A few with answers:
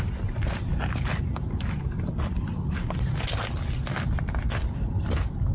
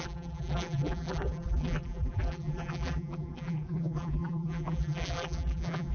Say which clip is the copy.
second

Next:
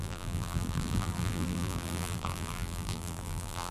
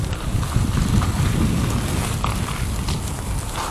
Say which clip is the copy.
first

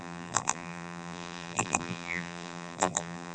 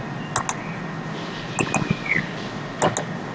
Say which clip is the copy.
first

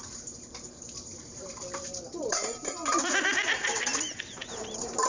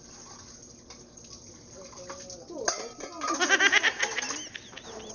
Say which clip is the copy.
first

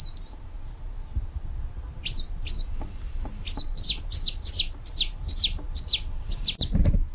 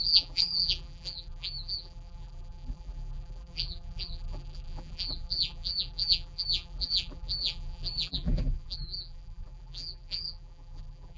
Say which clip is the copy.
second